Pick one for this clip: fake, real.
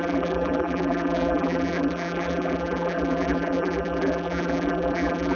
fake